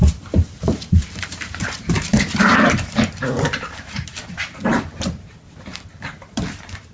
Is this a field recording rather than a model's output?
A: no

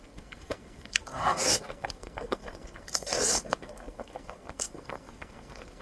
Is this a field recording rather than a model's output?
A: no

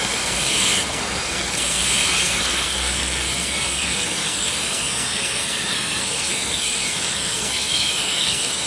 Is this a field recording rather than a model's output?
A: no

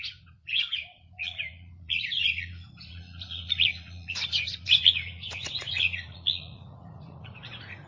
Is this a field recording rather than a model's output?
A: no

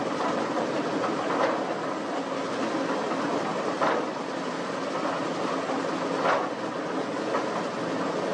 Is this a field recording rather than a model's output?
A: yes